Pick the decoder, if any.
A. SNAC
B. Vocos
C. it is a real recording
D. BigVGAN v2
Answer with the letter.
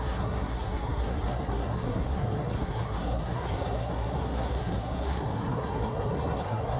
A